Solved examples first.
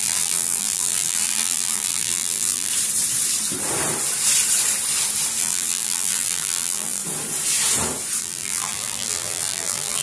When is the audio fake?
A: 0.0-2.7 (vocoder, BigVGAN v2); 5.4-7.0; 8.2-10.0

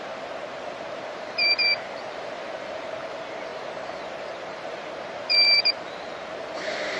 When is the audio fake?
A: 0.0-7.0 (vocoder, BigVGAN v2)

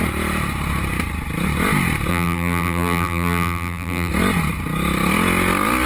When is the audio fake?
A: 2.1-4.1 (vocoder, BigVGAN v2)

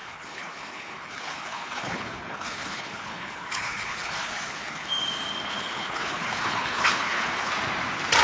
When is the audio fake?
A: 0.0-4.9 (codec, HILCodec); 5.5-7.5

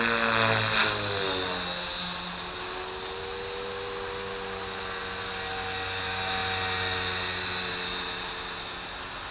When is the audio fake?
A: none

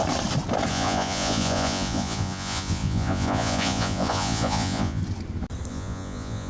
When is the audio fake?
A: 0.7-5.0 (vocoder, Vocos); 5.7-6.5

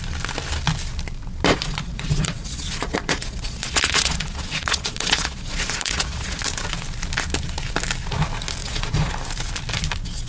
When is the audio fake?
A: 1.5-6.4 (vocoder, Vocos); 8.6-9.1

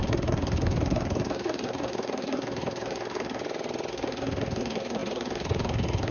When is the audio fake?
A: 0.0-3.4 (codec, SNAC); 3.9-6.1